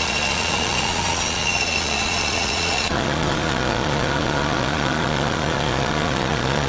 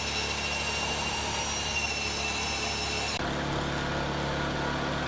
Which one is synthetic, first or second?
first